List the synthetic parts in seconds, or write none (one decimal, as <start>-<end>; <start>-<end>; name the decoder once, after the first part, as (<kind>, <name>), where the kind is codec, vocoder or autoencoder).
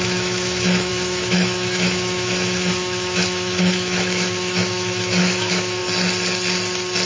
0.0-5.8 (autoencoder, DAC-VAE)